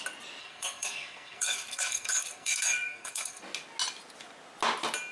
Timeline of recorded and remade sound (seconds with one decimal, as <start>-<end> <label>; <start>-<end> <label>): 0.0-0.4 recorded; 0.4-3.4 remade; 3.4-5.1 recorded